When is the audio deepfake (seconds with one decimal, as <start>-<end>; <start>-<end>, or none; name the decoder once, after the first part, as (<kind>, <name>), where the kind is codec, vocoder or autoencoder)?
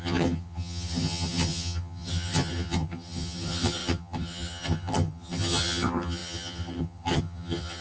0.0-7.8 (vocoder, HiFi-GAN)